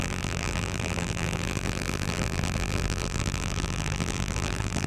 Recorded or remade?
remade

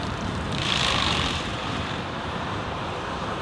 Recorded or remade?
remade